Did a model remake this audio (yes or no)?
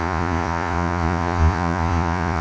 yes